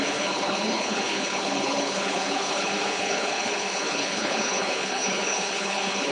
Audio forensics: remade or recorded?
remade